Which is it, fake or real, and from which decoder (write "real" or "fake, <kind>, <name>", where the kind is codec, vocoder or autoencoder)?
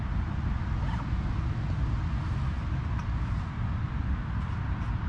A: real